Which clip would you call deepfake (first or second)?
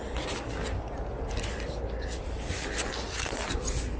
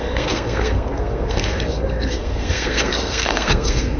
second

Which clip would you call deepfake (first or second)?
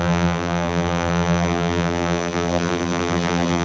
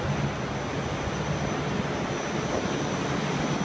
first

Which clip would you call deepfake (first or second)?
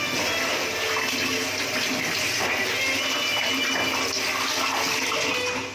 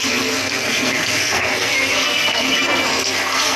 second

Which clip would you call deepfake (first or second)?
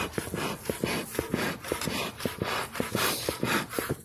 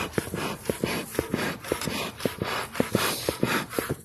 second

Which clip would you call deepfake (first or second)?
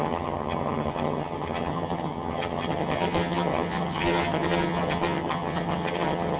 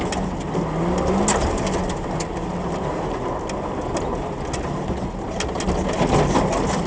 first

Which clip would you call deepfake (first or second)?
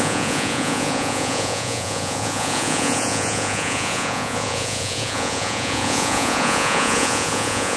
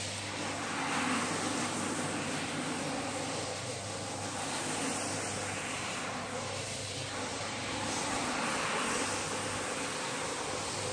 first